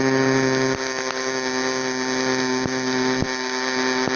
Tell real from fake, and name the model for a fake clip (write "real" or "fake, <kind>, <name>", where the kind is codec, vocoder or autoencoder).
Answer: real